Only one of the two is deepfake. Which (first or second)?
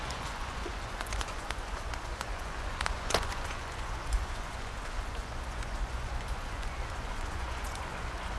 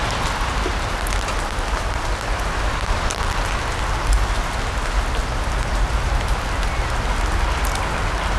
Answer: first